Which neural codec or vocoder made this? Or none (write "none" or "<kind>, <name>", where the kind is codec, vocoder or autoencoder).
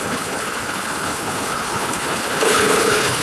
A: codec, HILCodec